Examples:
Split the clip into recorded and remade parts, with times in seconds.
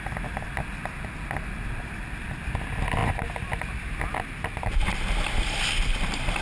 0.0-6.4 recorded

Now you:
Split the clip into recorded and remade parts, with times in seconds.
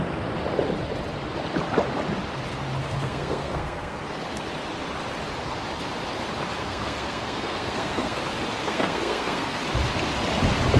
0.0-2.8 recorded; 2.8-4.0 remade; 4.0-6.6 recorded; 6.6-8.2 remade; 8.2-8.6 recorded; 8.6-9.6 remade; 9.6-10.8 recorded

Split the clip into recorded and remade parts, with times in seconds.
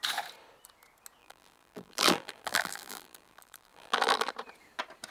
0.0-1.2 recorded; 1.2-4.3 remade; 4.3-5.1 recorded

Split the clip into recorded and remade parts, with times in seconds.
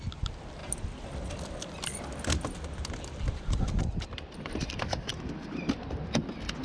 0.0-6.6 recorded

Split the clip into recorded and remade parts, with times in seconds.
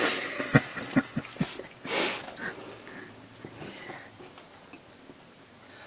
0.0-5.9 recorded